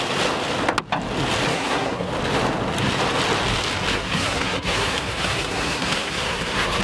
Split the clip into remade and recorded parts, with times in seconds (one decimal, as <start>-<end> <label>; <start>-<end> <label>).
0.0-1.5 recorded; 1.5-2.1 remade; 2.1-3.9 recorded; 3.9-6.8 remade